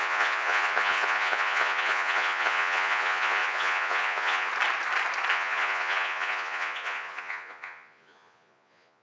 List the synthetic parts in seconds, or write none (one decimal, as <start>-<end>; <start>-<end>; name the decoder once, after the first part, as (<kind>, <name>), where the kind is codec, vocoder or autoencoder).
0.0-4.5 (vocoder, Vocos); 5.3-9.0